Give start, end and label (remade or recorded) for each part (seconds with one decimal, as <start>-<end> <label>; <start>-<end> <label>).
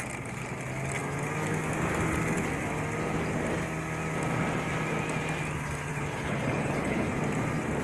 0.0-5.9 recorded; 5.9-7.2 remade; 7.2-7.8 recorded